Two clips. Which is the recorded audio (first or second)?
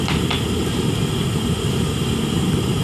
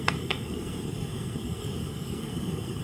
first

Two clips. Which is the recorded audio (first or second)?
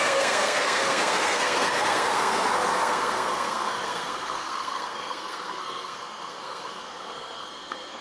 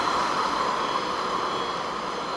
second